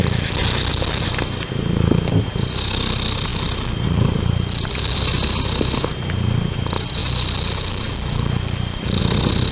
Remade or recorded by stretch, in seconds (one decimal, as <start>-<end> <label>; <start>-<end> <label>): 0.0-1.0 remade; 1.0-3.3 recorded; 3.3-5.0 remade; 5.0-7.0 recorded; 7.0-9.0 remade; 9.0-9.5 recorded